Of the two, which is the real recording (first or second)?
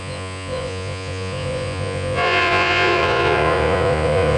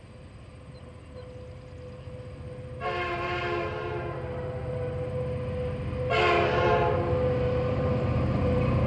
second